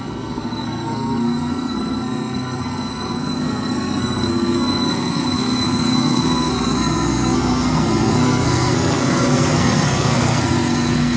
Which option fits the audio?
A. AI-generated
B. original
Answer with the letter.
A